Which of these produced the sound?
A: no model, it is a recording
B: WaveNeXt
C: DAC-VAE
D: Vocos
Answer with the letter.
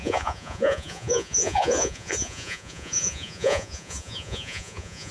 D